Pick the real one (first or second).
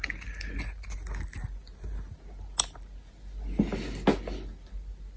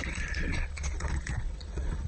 first